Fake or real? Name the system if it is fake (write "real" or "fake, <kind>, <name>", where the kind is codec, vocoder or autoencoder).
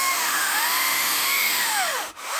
fake, autoencoder, DAC-VAE